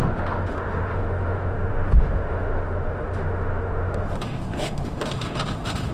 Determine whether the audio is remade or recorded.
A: remade